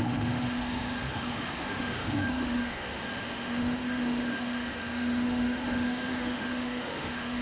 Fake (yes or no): yes